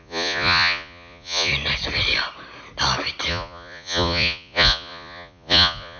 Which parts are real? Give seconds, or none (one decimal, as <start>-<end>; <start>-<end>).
1.5-3.3